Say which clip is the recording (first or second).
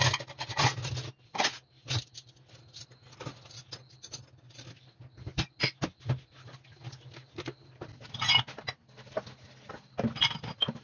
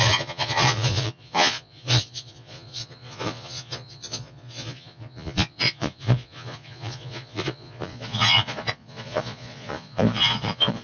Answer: first